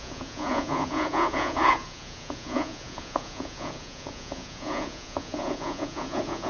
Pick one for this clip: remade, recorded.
remade